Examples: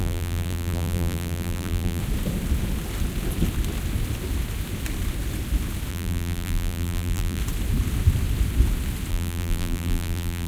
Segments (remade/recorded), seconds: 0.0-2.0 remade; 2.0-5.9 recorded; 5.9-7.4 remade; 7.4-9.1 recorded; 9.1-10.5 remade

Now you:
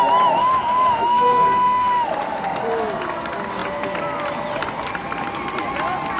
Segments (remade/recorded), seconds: 0.0-0.4 recorded; 0.4-2.6 remade; 2.6-6.2 recorded

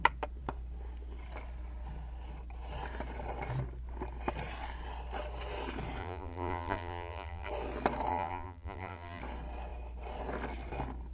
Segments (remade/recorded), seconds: 0.0-6.0 recorded; 6.0-7.5 remade; 7.5-8.1 recorded; 8.1-9.2 remade; 9.2-11.1 recorded

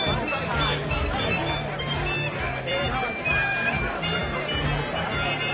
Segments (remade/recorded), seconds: 0.0-5.5 recorded

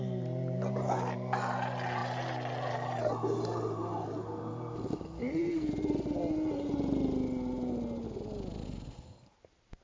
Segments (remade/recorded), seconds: 0.0-5.2 recorded; 5.2-5.7 remade; 5.7-9.8 recorded